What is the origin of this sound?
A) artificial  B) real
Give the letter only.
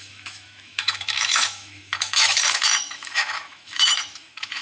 A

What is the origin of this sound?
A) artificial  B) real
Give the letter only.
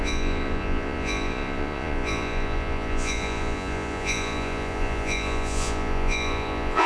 A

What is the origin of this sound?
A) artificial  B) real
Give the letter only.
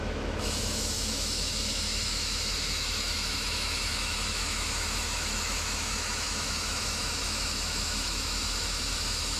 A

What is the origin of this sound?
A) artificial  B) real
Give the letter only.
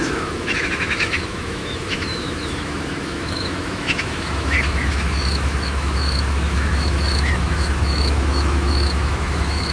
A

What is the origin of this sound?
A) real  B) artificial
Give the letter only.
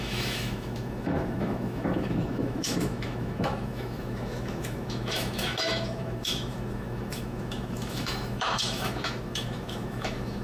B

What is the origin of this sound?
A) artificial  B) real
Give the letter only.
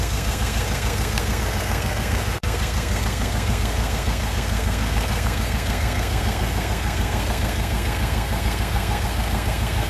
A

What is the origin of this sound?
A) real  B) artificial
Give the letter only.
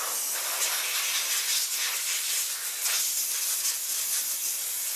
A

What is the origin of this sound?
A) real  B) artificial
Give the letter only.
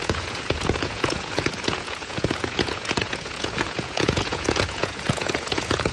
B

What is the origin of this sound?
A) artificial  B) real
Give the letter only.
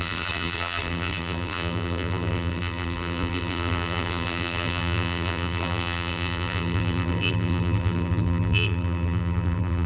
A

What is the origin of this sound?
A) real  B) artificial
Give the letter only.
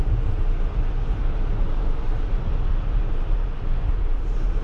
B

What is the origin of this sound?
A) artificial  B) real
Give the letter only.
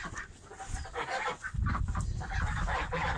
B